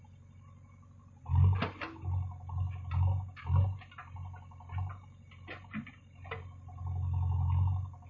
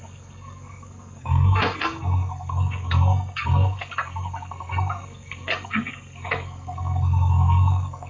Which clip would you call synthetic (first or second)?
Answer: second